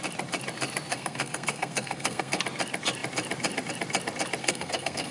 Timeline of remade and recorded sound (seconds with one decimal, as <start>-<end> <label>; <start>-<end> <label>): 0.0-0.9 recorded; 0.9-2.4 remade; 2.4-4.4 recorded; 4.4-5.1 remade